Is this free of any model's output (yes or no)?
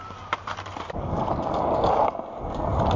yes